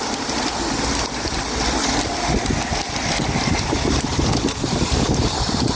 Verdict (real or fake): real